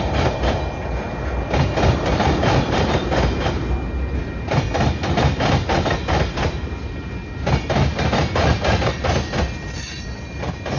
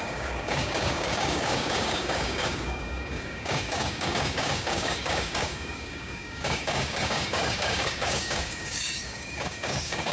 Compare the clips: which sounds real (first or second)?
first